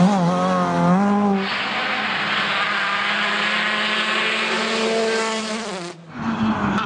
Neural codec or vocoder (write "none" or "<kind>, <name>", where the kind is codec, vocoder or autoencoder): none